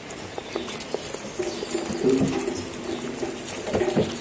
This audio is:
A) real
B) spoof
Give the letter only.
A